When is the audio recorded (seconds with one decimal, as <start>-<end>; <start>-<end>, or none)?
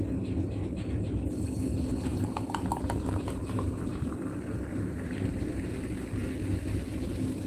0.0-2.1; 2.7-3.4; 3.9-4.7; 5.7-7.5